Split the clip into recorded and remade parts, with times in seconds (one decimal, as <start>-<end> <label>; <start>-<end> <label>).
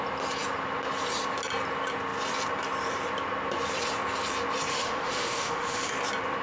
0.0-4.7 recorded; 4.7-5.9 remade; 5.9-6.4 recorded